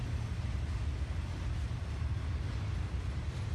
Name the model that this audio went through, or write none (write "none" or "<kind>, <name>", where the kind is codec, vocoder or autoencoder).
none